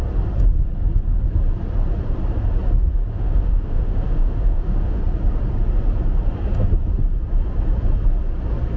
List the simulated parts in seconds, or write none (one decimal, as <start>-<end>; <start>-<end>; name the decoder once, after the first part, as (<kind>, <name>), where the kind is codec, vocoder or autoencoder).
3.1-5.0 (autoencoder, DAC-VAE)